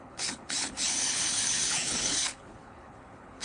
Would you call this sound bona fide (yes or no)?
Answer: no